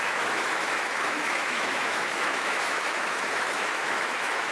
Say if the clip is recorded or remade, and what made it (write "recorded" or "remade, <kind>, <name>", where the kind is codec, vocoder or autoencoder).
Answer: remade, autoencoder, DAC-VAE